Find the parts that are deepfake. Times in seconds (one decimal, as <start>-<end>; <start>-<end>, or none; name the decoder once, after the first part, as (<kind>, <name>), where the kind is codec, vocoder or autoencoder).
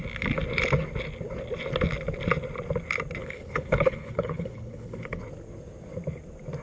3.2-5.2 (codec, HILCodec)